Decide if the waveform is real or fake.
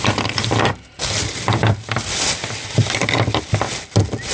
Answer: real